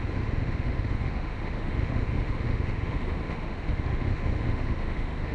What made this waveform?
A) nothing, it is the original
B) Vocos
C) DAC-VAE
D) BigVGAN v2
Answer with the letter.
C